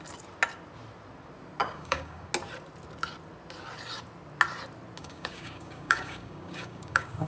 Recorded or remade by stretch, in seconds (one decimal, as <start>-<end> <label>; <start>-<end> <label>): 0.0-1.6 recorded; 1.6-2.3 remade; 2.3-5.0 recorded; 5.0-7.3 remade